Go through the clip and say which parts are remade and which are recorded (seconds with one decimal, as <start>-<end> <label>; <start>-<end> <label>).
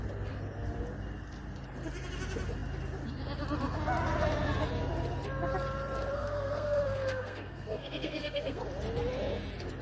0.0-6.2 recorded; 6.2-8.6 remade; 8.6-9.8 recorded